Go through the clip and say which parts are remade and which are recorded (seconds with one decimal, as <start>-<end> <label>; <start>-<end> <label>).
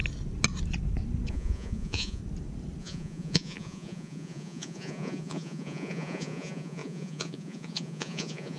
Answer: 0.0-1.3 recorded; 1.3-2.2 remade; 2.2-2.8 recorded; 2.8-8.6 remade